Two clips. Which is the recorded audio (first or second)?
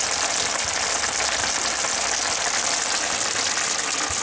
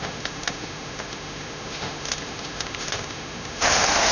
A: first